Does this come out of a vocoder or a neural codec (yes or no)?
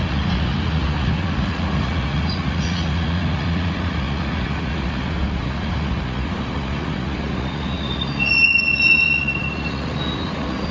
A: yes